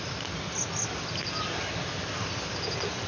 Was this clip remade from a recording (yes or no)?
no